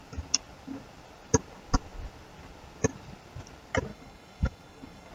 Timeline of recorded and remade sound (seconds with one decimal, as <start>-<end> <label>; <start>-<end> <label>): 0.0-3.9 recorded; 3.9-5.1 remade